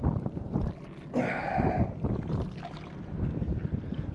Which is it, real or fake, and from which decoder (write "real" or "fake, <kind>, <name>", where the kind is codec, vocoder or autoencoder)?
real